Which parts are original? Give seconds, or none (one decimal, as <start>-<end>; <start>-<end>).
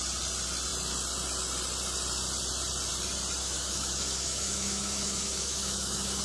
0.0-3.4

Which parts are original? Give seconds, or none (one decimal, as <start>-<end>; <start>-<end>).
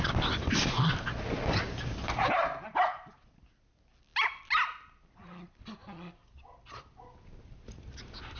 0.0-8.4